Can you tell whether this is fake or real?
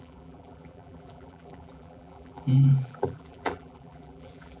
fake